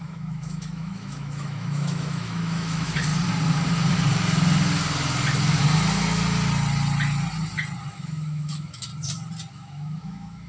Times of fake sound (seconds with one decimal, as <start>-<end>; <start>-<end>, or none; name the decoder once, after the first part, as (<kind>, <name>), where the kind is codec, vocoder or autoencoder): 0.0-3.1 (autoencoder, DAC-VAE); 7.9-8.9; 9.5-10.5